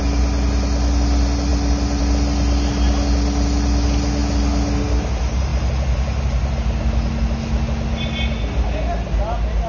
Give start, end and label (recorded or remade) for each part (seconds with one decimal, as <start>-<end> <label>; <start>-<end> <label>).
0.0-9.7 recorded